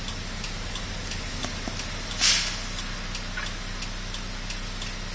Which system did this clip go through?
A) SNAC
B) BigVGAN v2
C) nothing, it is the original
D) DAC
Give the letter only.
C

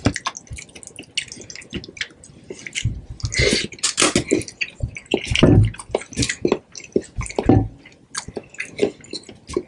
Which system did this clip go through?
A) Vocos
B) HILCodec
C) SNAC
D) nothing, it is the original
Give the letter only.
D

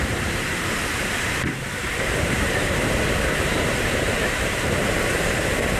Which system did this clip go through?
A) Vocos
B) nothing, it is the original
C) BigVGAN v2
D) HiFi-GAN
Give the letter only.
C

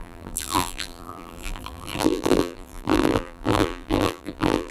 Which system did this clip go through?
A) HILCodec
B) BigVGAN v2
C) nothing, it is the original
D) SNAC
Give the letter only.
B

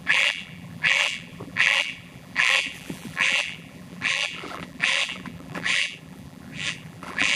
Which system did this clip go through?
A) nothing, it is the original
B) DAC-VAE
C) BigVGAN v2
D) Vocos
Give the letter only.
C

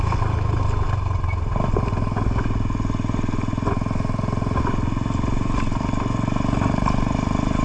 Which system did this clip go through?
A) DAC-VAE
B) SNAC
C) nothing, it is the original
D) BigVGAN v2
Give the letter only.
C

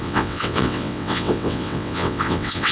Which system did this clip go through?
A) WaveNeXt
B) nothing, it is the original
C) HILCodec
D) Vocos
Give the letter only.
A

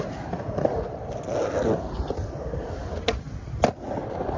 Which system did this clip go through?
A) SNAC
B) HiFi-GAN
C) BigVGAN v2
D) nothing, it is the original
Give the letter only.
D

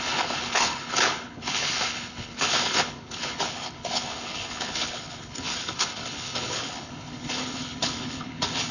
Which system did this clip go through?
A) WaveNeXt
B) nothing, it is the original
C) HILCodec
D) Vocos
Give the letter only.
C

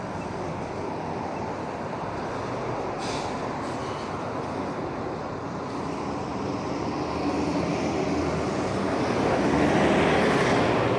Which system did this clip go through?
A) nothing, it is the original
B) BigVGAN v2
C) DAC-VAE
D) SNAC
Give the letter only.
A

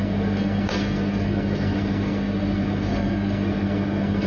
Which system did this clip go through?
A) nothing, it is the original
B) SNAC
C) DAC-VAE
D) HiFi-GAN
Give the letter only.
B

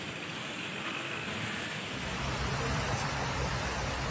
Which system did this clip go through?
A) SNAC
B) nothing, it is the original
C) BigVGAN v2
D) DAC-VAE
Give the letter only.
C